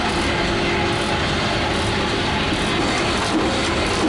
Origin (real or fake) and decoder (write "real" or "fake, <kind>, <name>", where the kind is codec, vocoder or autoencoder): real